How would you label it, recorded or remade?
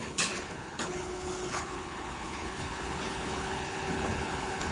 remade